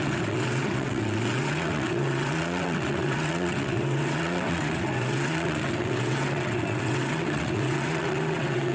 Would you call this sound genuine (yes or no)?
no